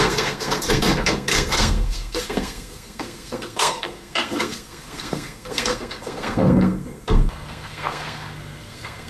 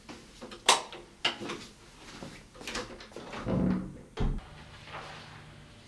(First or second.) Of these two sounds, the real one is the second